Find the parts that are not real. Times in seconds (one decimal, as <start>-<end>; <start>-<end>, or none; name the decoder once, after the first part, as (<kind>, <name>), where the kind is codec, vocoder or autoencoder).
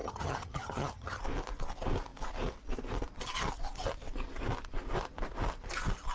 0.0-1.2 (vocoder, HiFi-GAN)